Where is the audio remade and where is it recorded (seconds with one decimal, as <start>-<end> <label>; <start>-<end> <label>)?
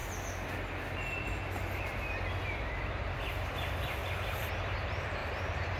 0.0-3.5 recorded; 3.5-4.0 remade; 4.0-4.5 recorded; 4.5-5.8 remade